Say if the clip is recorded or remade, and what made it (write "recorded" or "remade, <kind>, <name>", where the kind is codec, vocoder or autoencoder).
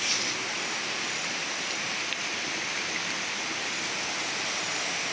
recorded